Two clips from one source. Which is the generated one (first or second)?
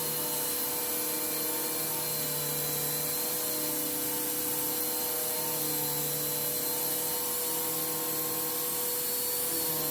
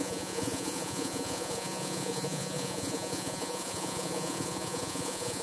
second